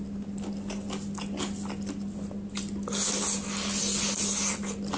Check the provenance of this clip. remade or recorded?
recorded